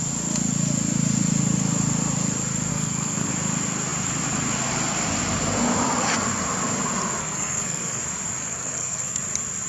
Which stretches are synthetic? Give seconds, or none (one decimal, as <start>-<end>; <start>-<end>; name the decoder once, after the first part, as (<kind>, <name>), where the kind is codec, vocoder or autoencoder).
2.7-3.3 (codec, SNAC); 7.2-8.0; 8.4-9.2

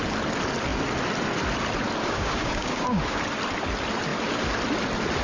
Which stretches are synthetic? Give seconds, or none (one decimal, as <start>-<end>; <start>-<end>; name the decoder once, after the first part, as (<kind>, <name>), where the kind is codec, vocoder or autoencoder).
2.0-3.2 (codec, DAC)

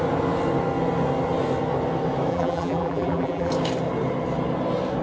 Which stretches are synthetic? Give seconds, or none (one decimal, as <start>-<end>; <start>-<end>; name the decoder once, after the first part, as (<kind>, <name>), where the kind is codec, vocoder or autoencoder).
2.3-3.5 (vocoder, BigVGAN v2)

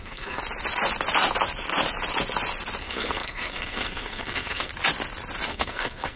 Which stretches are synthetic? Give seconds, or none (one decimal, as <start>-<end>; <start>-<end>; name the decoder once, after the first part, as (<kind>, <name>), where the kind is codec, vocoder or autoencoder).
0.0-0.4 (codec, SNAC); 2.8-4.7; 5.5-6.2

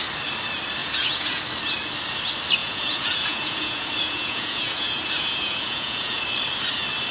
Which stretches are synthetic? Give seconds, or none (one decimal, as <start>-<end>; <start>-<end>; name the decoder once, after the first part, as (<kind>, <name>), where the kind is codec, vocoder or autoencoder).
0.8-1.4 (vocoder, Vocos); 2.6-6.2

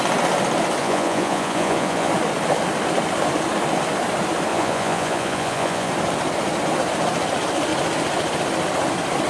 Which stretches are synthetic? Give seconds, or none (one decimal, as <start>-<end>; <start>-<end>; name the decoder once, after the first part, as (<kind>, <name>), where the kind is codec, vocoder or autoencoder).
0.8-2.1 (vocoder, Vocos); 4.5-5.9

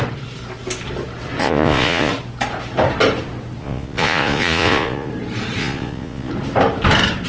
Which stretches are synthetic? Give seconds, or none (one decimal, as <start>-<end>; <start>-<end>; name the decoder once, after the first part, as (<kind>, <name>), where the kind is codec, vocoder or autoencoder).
1.4-2.1 (vocoder, Vocos); 3.6-5.1; 5.6-6.3

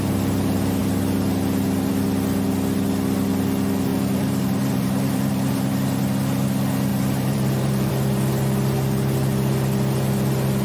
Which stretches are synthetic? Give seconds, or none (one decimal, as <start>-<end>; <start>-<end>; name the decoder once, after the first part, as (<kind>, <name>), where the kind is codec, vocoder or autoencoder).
3.9-5.7 (vocoder, BigVGAN v2); 6.9-7.9